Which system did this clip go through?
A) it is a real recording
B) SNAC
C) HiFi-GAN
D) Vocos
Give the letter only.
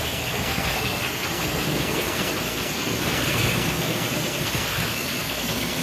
B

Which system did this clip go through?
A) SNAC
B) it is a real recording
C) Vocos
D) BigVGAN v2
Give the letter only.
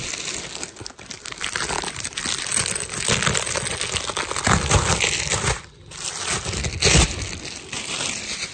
B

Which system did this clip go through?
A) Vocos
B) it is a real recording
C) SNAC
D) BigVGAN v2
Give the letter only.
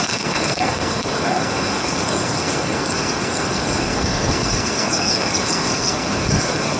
C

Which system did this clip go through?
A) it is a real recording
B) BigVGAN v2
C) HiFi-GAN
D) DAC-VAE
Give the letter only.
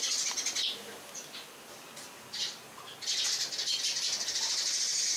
A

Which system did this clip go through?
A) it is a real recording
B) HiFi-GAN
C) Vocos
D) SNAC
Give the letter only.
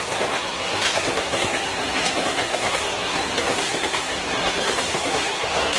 D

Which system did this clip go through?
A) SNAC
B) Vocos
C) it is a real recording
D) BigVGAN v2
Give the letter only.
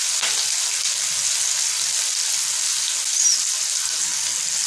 C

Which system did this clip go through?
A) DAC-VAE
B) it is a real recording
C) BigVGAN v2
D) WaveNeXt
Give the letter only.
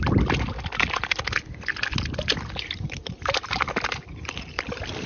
B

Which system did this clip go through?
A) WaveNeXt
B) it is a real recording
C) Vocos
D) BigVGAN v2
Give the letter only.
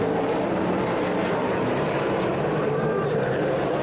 D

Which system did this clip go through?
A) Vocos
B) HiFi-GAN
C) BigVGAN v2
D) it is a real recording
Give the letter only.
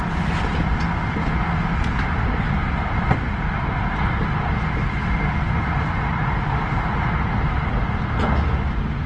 D